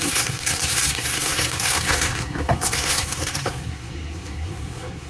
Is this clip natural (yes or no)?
no